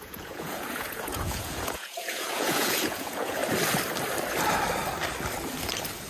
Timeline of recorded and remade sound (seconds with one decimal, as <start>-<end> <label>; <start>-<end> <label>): 0.0-3.4 remade; 3.4-6.1 recorded